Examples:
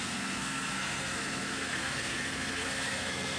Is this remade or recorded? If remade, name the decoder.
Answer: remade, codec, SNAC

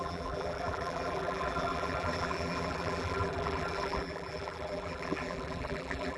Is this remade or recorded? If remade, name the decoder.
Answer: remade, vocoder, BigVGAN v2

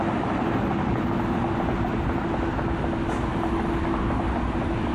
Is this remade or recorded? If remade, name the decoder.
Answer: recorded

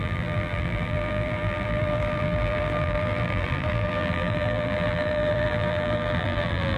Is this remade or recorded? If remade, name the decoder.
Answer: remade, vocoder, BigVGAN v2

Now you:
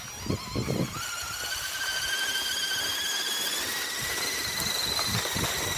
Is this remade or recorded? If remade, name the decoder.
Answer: recorded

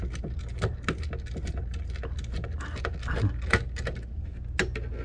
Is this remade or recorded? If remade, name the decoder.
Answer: recorded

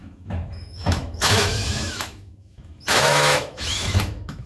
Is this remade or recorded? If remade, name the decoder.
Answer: remade, autoencoder, DAC-VAE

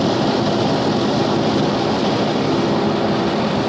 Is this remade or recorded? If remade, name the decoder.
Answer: recorded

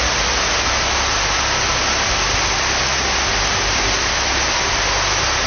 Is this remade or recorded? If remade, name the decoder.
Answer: recorded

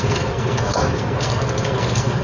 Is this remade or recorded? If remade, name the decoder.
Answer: remade, codec, SNAC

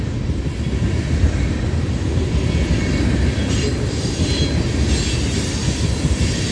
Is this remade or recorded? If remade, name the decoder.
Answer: recorded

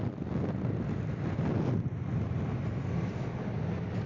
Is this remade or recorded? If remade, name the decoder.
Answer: recorded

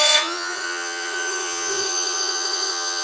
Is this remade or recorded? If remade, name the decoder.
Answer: remade, vocoder, Vocos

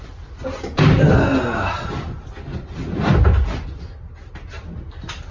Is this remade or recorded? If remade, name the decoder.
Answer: recorded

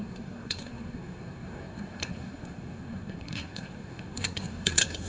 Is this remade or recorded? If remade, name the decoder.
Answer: remade, codec, SNAC